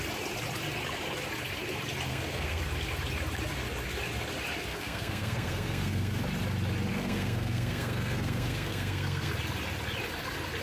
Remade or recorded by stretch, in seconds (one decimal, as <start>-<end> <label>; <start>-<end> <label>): 0.0-2.1 recorded; 2.1-2.6 remade; 2.6-4.7 recorded; 4.7-6.2 remade; 6.2-6.9 recorded; 6.9-9.3 remade; 9.3-10.6 recorded